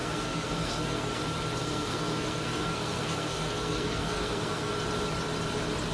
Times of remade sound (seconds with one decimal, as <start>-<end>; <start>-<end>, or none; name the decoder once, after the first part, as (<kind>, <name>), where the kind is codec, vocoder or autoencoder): 0.0-1.2 (codec, SNAC); 1.6-4.7